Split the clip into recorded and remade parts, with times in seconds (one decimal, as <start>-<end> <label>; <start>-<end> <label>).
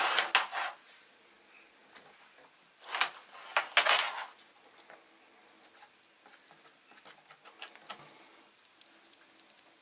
0.0-9.8 recorded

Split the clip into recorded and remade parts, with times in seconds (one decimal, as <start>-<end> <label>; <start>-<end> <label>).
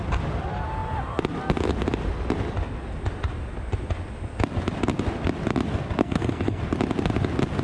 0.0-6.0 recorded; 6.0-6.6 remade; 6.6-7.6 recorded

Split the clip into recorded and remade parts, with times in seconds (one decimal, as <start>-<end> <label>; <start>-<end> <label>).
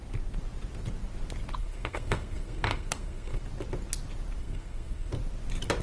0.0-1.6 recorded; 1.6-3.4 remade; 3.4-4.4 recorded; 4.4-5.1 remade; 5.1-5.8 recorded